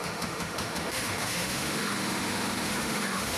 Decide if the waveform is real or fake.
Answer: fake